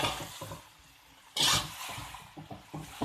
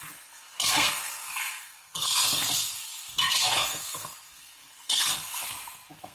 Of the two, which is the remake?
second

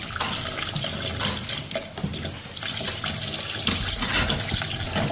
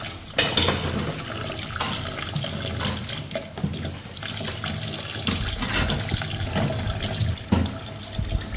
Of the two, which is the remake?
first